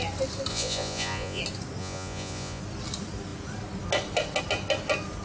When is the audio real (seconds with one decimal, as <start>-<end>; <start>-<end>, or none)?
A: 0.0-0.5; 1.4-1.8; 2.6-5.2

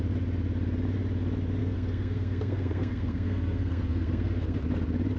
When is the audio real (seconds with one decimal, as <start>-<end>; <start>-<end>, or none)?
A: 0.0-1.6; 4.6-5.2

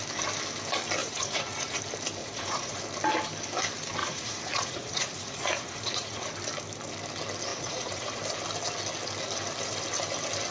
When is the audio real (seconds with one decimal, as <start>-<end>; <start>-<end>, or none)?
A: 0.0-1.0; 1.8-2.2; 2.8-4.0; 6.3-7.5; 8.2-10.5